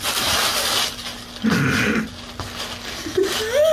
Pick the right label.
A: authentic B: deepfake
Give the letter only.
A